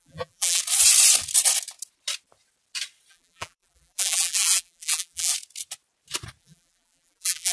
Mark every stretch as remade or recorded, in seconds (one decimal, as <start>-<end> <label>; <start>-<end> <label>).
0.0-0.6 remade; 0.6-3.1 recorded; 3.1-5.3 remade; 5.3-6.4 recorded; 6.4-7.5 remade